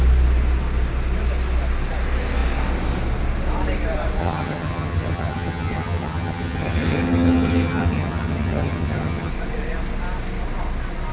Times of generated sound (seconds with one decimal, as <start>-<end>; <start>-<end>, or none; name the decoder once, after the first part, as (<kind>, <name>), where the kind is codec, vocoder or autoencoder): 4.2-9.3 (vocoder, HiFi-GAN)